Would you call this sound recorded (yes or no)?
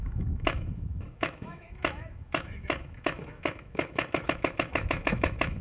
no